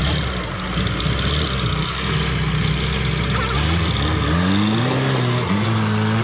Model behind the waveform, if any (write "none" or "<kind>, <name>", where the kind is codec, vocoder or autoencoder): none